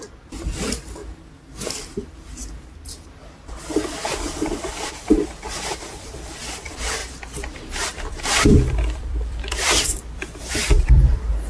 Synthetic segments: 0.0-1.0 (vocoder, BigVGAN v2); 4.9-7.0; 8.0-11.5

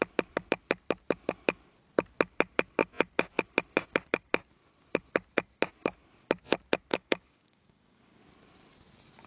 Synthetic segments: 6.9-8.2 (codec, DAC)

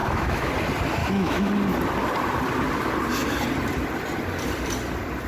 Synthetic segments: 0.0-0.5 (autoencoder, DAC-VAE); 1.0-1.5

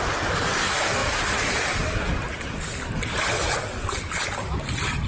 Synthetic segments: none

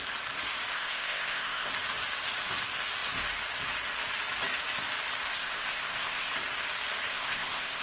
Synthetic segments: 0.7-1.7 (codec, ZipCodec); 5.3-6.3; 7.1-7.8

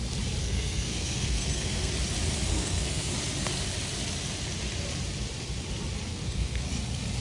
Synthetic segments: 0.4-1.9 (codec, SNAC); 2.5-3.1; 6.1-6.7

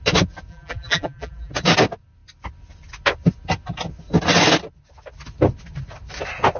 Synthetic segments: 0.5-1.5 (vocoder, BigVGAN v2)